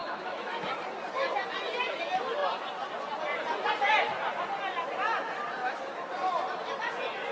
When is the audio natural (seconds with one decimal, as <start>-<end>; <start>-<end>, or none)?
0.7-7.3